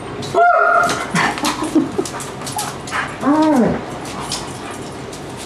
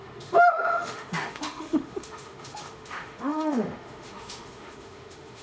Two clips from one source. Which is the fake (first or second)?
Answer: second